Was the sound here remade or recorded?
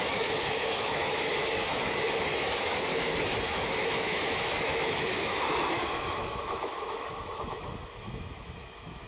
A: remade